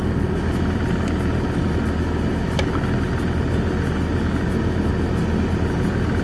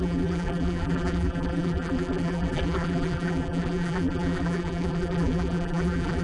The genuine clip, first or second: first